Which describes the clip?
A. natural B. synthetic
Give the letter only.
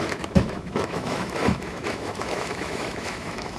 B